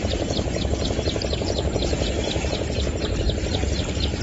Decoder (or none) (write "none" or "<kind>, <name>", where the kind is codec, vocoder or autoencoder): none